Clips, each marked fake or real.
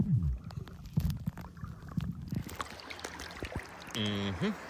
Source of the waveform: real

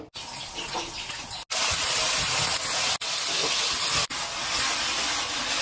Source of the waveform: real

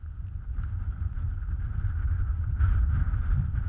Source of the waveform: fake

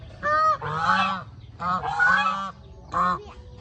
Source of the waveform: real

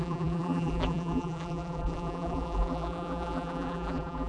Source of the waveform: fake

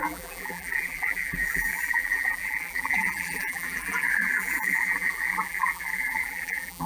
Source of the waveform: fake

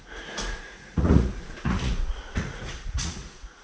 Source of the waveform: fake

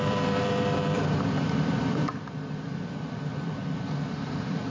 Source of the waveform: fake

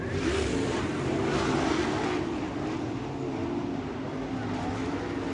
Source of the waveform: real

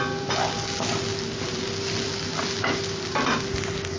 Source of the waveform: real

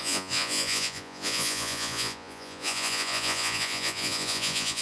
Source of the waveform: fake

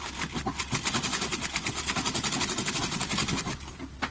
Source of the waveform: real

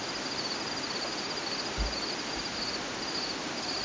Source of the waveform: real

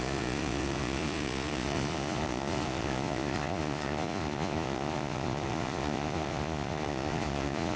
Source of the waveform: fake